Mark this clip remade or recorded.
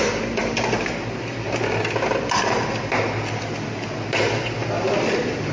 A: recorded